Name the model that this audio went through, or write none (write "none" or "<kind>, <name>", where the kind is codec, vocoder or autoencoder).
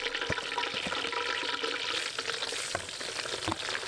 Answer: none